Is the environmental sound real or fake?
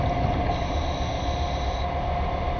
real